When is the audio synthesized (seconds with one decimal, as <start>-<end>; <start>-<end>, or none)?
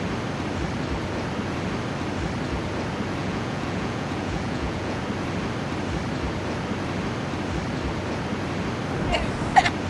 3.2-5.0